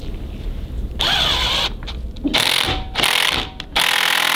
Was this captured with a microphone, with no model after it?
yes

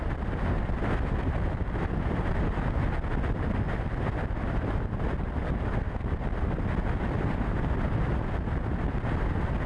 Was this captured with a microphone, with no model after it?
yes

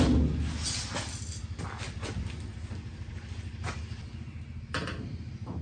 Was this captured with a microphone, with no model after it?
yes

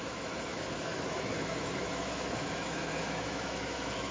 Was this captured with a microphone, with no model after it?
no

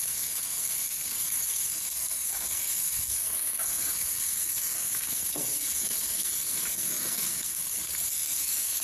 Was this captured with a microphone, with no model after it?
no